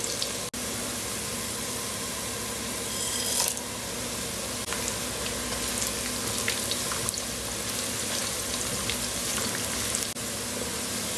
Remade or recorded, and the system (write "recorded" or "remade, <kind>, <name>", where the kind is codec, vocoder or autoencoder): recorded